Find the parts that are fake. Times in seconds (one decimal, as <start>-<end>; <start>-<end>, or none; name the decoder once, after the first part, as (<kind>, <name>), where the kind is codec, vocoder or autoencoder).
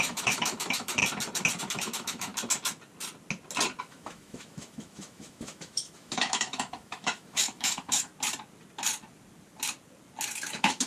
0.0-1.0 (autoencoder, DAC-VAE); 1.6-2.3; 3.8-8.1; 10.5-10.9